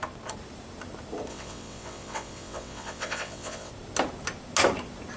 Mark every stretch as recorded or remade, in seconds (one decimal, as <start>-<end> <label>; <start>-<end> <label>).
0.0-1.3 recorded; 1.3-3.7 remade; 3.7-5.2 recorded